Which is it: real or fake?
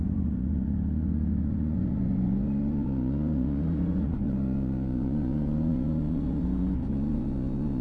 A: fake